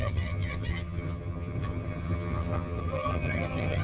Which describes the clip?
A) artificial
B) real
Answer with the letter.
A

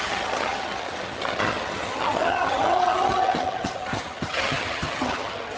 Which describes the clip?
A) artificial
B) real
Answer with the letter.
A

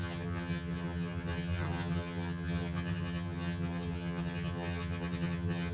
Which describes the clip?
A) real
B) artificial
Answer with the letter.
B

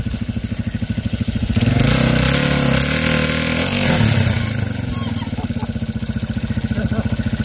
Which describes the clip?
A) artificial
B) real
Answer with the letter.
B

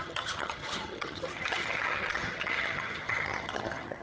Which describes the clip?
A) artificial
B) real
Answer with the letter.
A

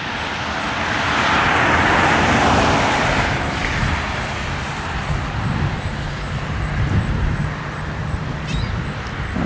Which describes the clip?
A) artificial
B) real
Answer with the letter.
B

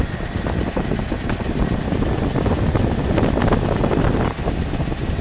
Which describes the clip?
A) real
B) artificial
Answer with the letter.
A